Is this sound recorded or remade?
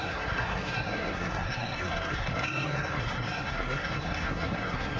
remade